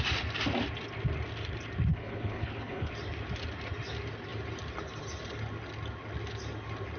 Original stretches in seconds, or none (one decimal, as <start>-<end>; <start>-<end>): 0.0-1.9; 2.9-7.0